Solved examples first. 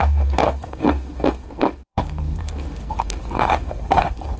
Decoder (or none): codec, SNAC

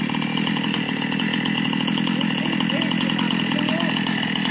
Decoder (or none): none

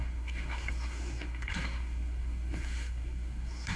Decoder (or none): codec, SNAC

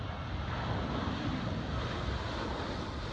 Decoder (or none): none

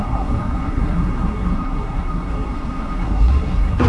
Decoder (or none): codec, SNAC